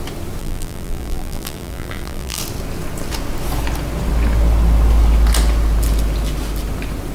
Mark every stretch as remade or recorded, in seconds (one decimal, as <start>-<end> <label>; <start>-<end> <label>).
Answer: 0.0-0.4 recorded; 0.4-2.4 remade; 2.4-7.1 recorded